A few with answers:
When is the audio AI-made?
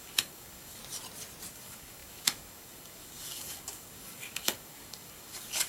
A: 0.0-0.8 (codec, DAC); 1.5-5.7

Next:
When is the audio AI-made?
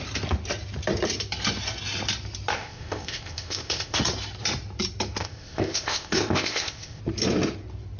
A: 2.5-4.0 (codec, ZipCodec); 5.2-7.0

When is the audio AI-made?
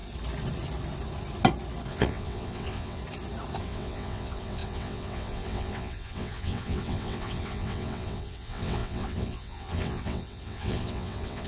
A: 1.9-3.0 (vocoder, WaveNeXt); 3.6-11.5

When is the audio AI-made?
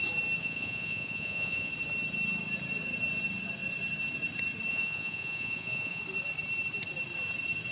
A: 0.4-1.7 (vocoder, Vocos); 4.7-6.0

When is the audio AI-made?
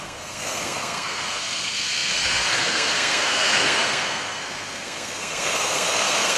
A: 0.0-6.4 (codec, SNAC)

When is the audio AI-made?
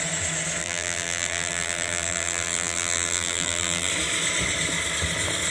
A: 0.6-3.9 (vocoder, BigVGAN v2)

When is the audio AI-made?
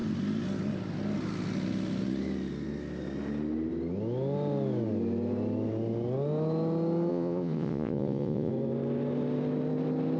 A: 7.1-8.5 (vocoder, Vocos)